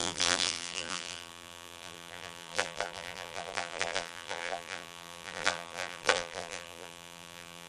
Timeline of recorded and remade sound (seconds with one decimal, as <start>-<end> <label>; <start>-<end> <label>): 0.0-7.7 remade